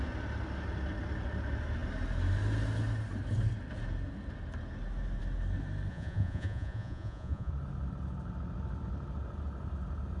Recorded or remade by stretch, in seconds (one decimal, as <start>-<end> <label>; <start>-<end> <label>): 0.0-5.9 recorded; 5.9-7.5 remade; 7.5-10.2 recorded